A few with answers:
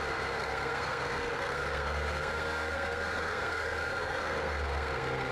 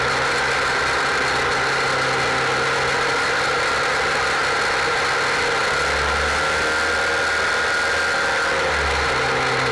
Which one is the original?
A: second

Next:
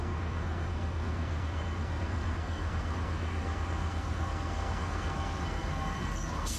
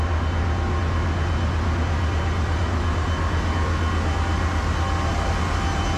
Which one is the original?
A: second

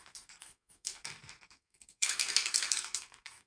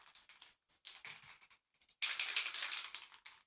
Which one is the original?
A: second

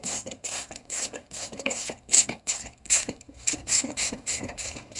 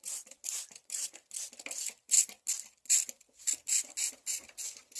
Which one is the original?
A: second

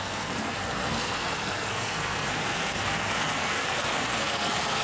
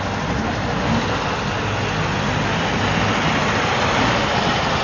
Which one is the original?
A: second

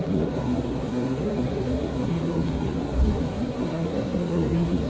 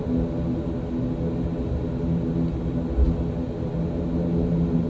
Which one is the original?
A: second